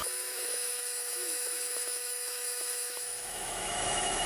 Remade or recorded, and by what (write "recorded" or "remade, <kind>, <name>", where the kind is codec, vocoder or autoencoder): remade, autoencoder, DAC-VAE